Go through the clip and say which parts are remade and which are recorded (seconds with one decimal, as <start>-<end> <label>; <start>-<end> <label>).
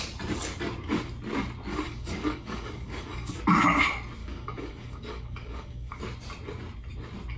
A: 0.0-1.7 recorded; 1.7-3.4 remade; 3.4-4.2 recorded; 4.2-6.0 remade; 6.0-7.4 recorded